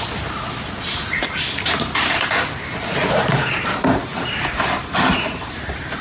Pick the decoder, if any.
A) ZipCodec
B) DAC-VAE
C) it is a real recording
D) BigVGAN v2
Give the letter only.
D